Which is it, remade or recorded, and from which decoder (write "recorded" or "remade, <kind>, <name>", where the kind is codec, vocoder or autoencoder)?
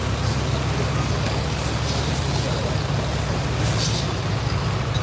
recorded